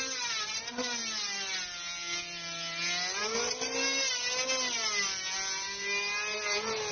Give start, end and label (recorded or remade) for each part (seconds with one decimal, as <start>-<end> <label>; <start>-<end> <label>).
0.0-6.9 recorded